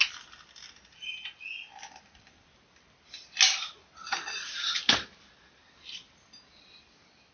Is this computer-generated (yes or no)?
no